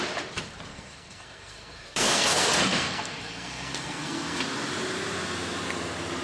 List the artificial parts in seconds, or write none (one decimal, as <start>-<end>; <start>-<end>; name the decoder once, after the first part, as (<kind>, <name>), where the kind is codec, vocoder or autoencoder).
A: 0.7-4.4 (codec, SNAC)